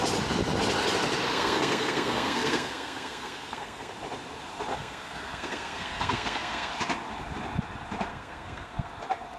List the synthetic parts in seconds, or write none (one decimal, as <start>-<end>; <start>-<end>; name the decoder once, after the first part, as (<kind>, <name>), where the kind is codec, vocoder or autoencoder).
1.3-3.9 (codec, SNAC); 4.7-6.7; 8.1-8.9